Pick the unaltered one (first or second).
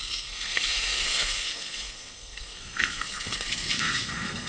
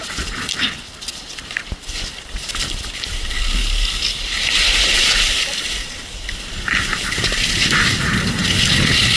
second